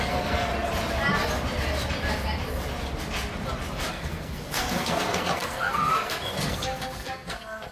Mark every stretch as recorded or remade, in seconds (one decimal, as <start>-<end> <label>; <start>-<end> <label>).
0.0-0.5 remade; 0.5-3.9 recorded; 3.9-7.7 remade